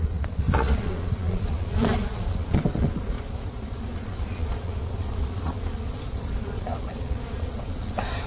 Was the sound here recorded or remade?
remade